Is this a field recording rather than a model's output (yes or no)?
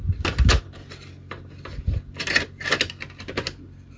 yes